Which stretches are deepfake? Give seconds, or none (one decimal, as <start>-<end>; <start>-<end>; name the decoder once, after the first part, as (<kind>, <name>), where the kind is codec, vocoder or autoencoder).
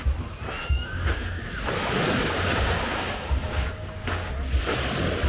0.6-1.5 (codec, DAC); 2.2-4.4